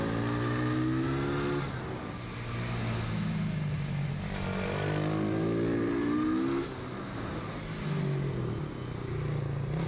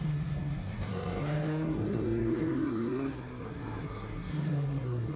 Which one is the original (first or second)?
first